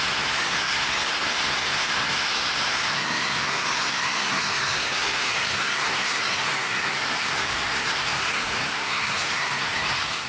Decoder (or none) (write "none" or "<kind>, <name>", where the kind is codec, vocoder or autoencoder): codec, SNAC